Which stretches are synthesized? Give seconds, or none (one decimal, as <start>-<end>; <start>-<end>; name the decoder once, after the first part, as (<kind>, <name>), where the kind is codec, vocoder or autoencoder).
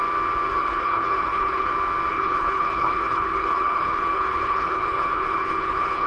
0.5-1.7 (codec, HILCodec); 2.1-6.1